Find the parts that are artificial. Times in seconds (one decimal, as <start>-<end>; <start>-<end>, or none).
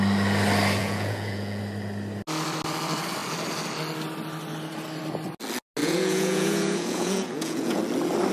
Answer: 0.8-1.6; 5.8-7.8